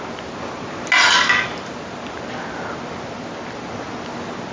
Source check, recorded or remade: recorded